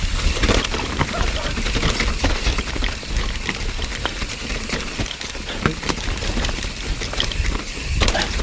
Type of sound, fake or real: real